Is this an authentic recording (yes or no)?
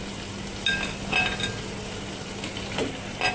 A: yes